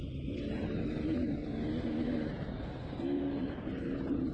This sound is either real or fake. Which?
real